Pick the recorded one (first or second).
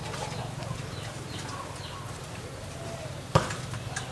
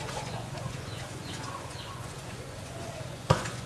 first